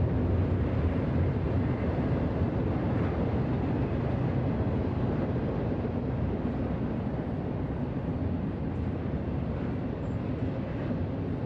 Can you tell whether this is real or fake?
real